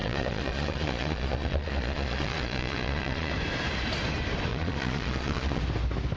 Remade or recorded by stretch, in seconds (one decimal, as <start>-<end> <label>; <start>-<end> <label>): 0.0-3.3 remade; 3.3-4.5 recorded; 4.5-5.6 remade; 5.6-6.2 recorded